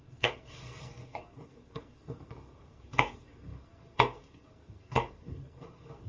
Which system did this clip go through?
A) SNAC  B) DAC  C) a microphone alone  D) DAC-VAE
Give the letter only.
A